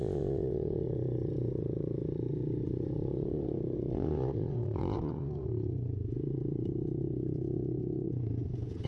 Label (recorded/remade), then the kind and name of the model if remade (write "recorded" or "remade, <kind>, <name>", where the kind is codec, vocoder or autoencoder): remade, vocoder, Vocos